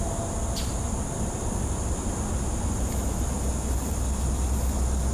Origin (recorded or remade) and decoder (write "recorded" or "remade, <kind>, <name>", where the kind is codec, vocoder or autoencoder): recorded